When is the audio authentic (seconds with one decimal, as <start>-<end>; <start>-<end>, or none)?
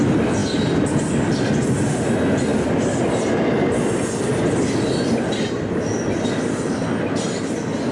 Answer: 0.0-7.9